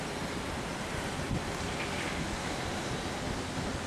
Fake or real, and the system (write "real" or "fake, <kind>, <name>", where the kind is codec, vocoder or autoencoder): real